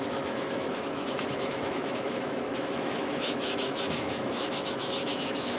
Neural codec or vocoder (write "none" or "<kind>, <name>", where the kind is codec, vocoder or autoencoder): autoencoder, DAC-VAE